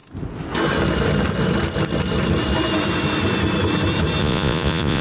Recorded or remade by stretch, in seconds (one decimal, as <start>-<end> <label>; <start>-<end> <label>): 0.0-4.2 recorded; 4.2-5.0 remade

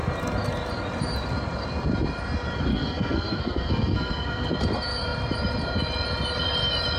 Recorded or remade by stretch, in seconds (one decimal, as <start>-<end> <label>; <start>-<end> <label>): 0.0-2.7 recorded; 2.7-4.5 remade; 4.5-7.0 recorded

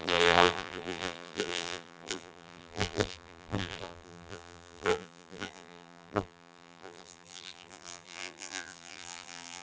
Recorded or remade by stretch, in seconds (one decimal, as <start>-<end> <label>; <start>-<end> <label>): 0.0-9.6 remade

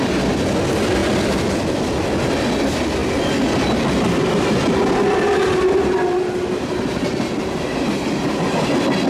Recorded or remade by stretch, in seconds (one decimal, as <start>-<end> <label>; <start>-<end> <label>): 0.0-9.1 recorded

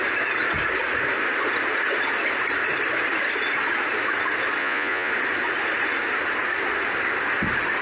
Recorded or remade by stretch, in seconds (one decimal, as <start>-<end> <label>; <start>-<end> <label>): 0.0-4.6 recorded; 4.6-5.1 remade; 5.1-7.8 recorded

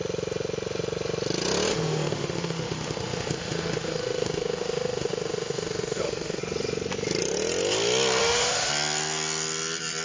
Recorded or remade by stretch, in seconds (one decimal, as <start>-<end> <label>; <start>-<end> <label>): 0.0-1.7 recorded; 1.7-6.4 remade; 6.4-8.2 recorded; 8.2-8.7 remade; 8.7-10.0 recorded